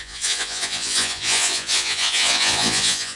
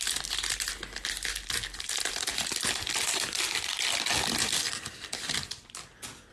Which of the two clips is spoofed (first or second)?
first